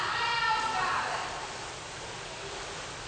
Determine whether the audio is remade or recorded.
recorded